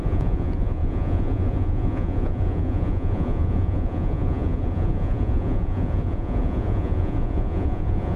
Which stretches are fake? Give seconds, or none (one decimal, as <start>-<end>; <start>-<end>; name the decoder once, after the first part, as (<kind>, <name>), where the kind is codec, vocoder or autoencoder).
0.0-8.2 (vocoder, Vocos)